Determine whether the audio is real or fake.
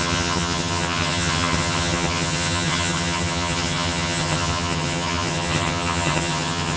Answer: fake